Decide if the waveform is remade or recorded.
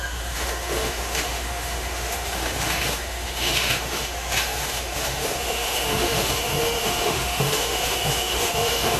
remade